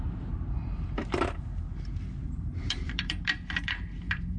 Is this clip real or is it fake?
fake